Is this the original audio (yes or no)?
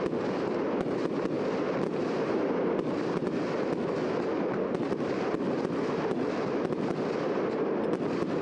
yes